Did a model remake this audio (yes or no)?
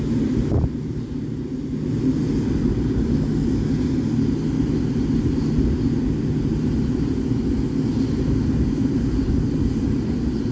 no